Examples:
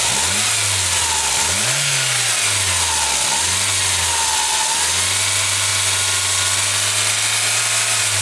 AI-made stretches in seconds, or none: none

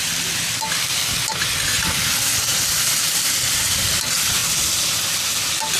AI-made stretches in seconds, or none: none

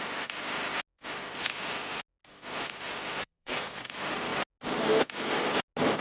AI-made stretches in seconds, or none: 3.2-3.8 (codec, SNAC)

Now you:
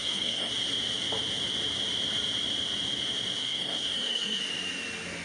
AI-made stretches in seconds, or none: 0.0-0.5 (codec, SNAC); 3.4-4.4